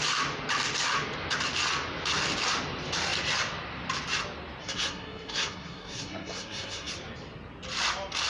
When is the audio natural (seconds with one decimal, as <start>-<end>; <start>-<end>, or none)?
0.0-4.6; 6.9-8.3